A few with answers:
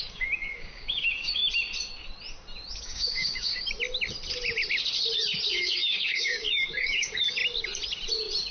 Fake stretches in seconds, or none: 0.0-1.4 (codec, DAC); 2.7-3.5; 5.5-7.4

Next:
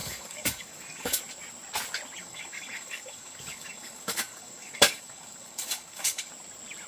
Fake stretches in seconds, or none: 0.0-1.2 (codec, DAC); 2.2-6.3